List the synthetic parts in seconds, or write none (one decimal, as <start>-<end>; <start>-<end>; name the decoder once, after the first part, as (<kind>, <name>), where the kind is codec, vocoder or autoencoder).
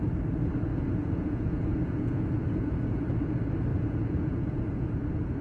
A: 0.7-3.0 (vocoder, Vocos); 3.7-4.9